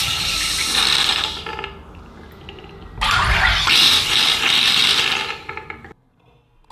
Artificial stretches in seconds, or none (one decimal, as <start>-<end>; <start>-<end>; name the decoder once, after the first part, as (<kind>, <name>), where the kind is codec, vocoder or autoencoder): none